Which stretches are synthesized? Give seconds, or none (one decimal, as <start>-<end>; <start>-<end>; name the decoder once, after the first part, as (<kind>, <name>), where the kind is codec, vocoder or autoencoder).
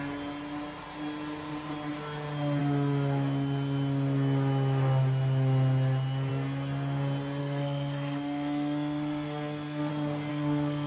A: 7.4-9.9 (codec, SNAC); 10.3-10.9